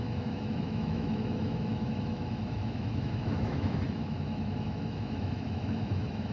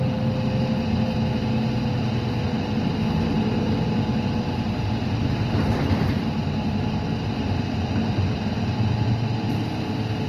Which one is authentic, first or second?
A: second